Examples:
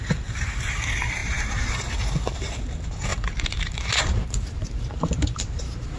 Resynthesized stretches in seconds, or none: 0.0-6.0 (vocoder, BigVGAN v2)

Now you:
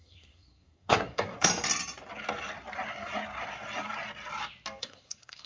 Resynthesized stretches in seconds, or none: 0.0-1.5 (codec, SNAC); 4.8-5.5

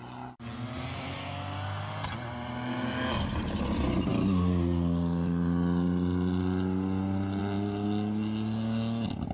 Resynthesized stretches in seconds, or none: none